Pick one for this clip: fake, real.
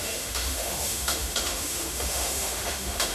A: fake